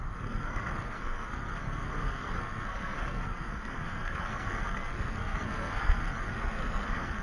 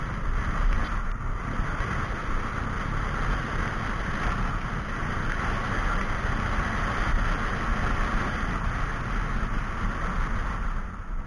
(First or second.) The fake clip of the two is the first